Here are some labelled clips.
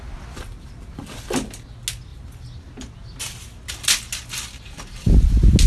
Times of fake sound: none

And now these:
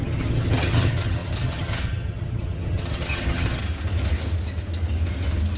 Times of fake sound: 0.0-3.6 (vocoder, HiFi-GAN)

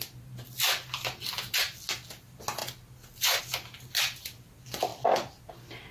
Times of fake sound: none

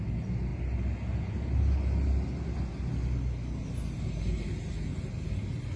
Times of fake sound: none

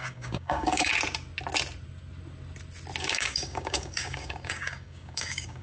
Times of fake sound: 0.0-0.9 (codec, DAC); 3.0-5.6